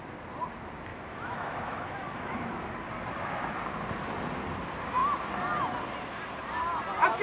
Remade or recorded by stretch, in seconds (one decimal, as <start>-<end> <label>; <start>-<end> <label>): 0.0-0.9 recorded; 0.9-2.7 remade; 2.7-7.2 recorded